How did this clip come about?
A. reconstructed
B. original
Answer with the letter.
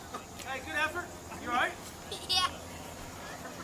B